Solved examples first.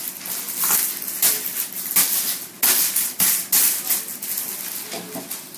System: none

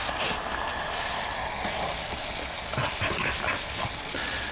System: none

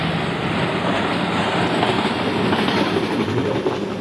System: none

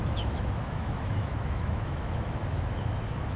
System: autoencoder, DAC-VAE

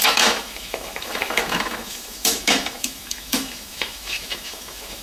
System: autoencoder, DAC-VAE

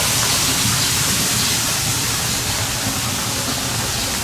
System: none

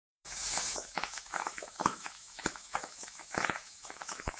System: autoencoder, DAC-VAE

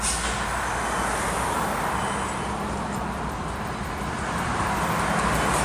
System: none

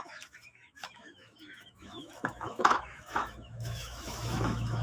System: autoencoder, DAC-VAE